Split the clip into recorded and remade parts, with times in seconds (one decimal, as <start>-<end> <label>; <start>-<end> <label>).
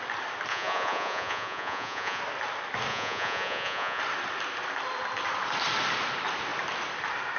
0.0-0.5 recorded; 0.5-2.2 remade; 2.2-2.9 recorded; 2.9-4.0 remade; 4.0-7.4 recorded